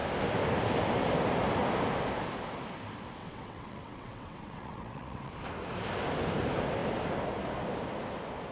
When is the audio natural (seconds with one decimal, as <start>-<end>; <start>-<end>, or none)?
0.0-3.2; 5.3-8.5